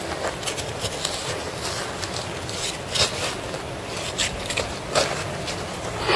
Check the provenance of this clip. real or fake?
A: real